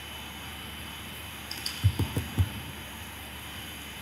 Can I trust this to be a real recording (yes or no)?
no